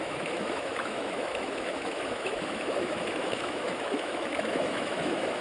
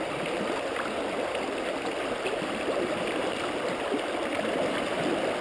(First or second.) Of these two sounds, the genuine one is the second